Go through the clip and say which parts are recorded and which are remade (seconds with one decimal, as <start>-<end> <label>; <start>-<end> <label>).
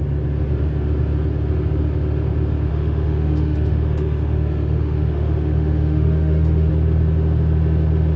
0.0-2.7 recorded; 2.7-6.7 remade; 6.7-8.2 recorded